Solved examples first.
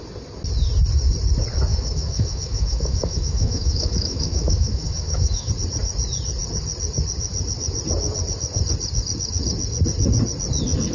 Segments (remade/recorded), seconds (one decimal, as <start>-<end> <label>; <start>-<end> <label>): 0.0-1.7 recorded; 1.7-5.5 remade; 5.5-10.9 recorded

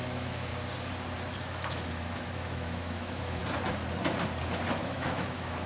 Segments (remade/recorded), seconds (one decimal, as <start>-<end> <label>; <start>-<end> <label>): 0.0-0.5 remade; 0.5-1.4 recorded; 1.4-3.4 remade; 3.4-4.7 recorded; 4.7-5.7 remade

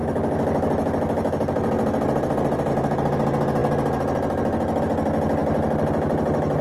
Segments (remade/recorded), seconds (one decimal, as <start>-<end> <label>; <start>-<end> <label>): 0.0-6.6 recorded

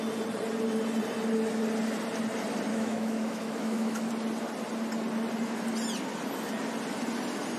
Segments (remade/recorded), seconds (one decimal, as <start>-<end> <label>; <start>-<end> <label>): 0.0-2.7 recorded; 2.7-4.1 remade; 4.1-7.6 recorded